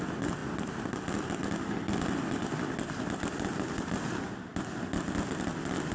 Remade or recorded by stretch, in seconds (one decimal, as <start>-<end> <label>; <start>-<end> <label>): 0.0-5.9 recorded